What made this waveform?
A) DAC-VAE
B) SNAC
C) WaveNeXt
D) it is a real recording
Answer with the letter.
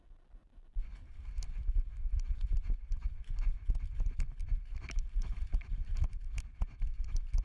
D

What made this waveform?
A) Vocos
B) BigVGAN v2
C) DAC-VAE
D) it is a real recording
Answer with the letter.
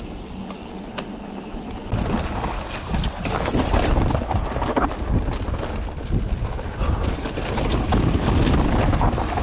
D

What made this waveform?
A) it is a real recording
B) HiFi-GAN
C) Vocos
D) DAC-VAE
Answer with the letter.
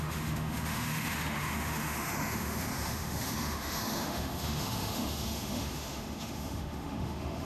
D